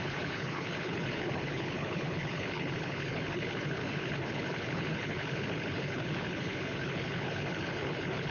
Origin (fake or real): fake